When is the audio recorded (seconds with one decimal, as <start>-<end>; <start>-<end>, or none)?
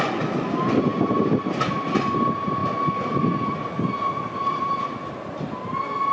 0.0-6.1